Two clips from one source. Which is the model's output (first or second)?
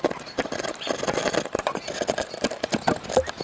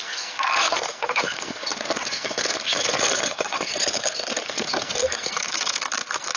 second